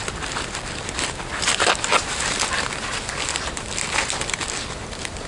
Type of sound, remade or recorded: recorded